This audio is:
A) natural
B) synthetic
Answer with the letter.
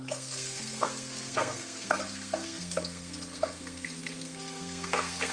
B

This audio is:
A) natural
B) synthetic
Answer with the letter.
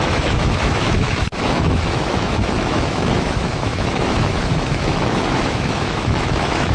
B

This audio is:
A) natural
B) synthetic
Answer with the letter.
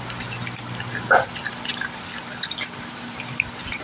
B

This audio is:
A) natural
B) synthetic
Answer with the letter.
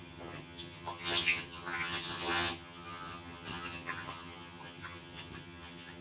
B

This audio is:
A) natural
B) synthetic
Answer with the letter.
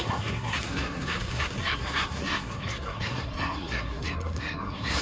B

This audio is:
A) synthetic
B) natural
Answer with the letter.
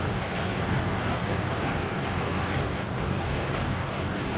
A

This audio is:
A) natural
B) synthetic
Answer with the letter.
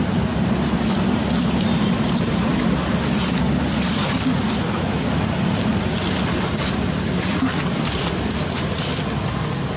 A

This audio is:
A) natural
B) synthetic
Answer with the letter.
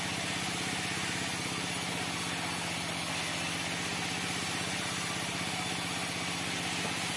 A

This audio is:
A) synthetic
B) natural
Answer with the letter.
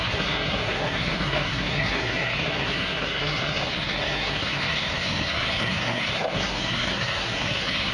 A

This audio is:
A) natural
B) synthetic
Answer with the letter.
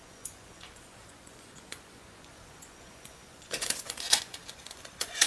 B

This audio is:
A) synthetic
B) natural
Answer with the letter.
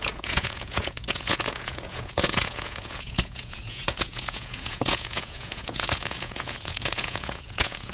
A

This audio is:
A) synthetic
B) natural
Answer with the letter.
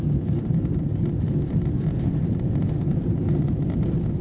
B